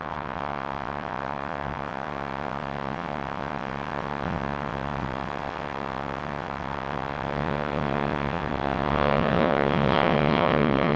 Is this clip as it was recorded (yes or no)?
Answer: no